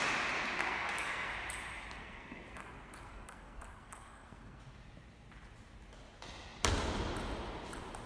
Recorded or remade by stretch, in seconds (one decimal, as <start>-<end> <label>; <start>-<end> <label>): 0.0-0.6 recorded; 0.6-1.3 remade; 1.3-2.0 recorded; 2.0-4.6 remade; 4.6-8.1 recorded